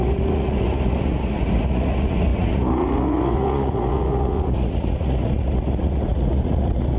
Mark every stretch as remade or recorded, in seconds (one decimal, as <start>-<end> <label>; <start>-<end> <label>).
0.0-7.0 remade